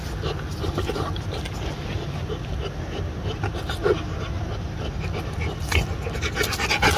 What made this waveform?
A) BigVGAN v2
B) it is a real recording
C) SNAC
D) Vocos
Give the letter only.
B